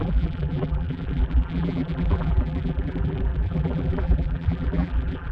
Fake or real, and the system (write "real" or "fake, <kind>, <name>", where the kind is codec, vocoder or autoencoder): fake, vocoder, BigVGAN v2